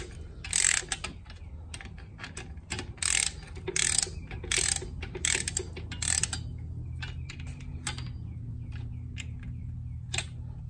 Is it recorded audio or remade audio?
recorded